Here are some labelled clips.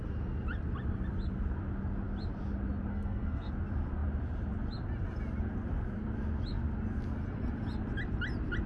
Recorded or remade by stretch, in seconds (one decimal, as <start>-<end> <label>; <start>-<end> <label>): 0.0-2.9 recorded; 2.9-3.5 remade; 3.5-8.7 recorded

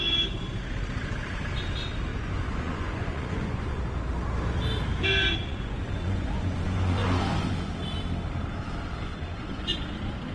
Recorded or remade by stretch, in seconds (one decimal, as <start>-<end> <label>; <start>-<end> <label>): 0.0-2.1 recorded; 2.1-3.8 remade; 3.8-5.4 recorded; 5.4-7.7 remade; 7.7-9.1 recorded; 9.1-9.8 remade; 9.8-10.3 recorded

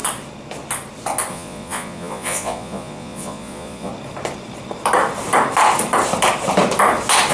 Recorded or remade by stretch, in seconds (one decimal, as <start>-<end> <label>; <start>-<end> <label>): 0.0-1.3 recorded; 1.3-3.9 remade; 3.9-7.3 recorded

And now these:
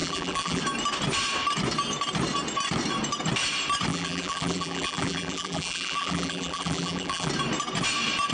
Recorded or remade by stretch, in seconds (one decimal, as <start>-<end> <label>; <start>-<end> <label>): 0.0-0.6 remade; 0.6-3.9 recorded; 3.9-7.3 remade; 7.3-8.3 recorded

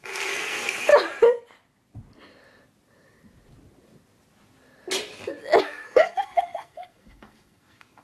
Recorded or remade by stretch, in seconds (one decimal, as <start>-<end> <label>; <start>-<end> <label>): 0.0-0.9 remade; 0.9-5.6 recorded; 5.6-8.0 remade

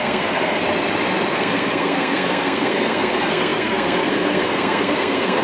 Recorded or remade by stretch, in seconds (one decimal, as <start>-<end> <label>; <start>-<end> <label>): 0.0-0.6 remade; 0.6-1.3 recorded; 1.3-5.4 remade